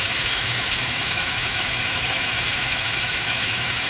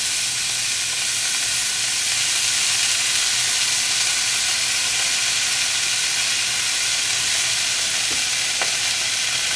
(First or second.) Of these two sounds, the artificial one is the first